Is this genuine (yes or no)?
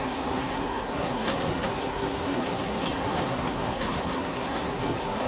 no